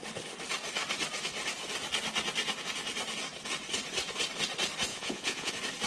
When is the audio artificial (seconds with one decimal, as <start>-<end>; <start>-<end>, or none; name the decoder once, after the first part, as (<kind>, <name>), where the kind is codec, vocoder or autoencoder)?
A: 4.9-5.5 (vocoder, Vocos)